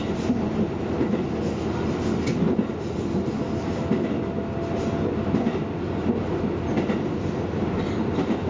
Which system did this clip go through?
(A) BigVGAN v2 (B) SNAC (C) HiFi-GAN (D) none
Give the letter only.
D